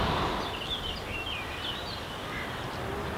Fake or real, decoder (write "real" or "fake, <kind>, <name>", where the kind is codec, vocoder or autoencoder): real